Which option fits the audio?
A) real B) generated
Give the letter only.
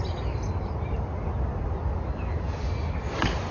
A